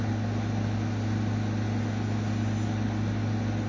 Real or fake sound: real